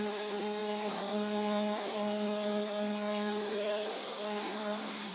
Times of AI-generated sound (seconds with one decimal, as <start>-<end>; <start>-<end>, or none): 0.0-5.1